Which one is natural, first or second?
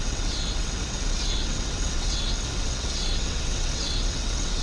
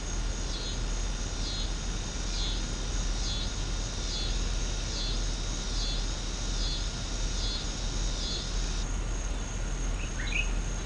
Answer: second